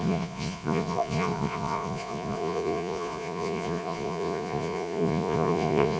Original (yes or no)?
no